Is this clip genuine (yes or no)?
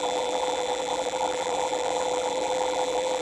no